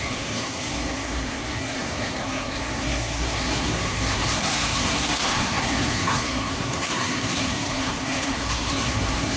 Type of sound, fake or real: fake